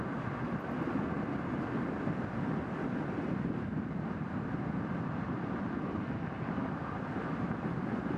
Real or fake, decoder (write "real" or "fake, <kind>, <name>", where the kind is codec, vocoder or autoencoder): real